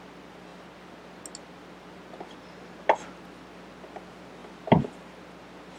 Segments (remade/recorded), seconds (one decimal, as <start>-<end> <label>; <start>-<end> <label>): 0.0-5.8 recorded